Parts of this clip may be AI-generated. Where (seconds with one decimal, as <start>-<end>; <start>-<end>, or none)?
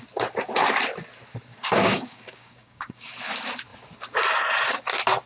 1.5-3.3